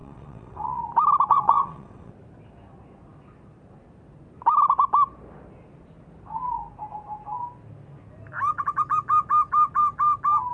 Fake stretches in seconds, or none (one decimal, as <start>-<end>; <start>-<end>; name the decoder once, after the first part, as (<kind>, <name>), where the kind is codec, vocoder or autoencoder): 0.0-0.8 (vocoder, WaveNeXt); 1.3-2.1

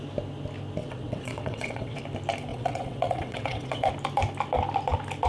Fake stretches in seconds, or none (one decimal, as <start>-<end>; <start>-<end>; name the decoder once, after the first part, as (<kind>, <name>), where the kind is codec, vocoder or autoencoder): 0.8-2.0 (vocoder, WaveNeXt); 2.5-3.9

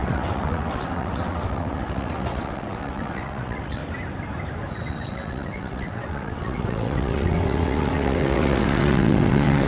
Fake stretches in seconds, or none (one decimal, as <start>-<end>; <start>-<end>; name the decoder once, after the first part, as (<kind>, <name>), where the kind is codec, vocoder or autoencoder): 0.0-3.8 (vocoder, WaveNeXt); 4.7-9.7